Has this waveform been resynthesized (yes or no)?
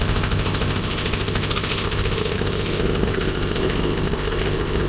yes